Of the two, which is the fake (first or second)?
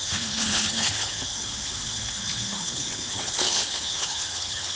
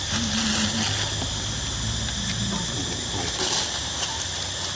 first